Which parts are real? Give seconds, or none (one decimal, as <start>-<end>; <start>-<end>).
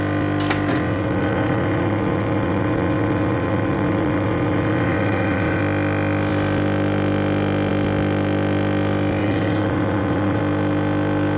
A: 0.0-0.7; 5.6-9.2; 10.4-11.4